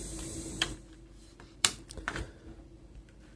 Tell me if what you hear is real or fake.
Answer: fake